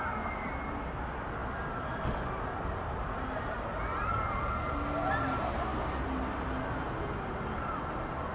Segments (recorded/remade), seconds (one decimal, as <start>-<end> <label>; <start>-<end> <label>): 0.0-8.3 recorded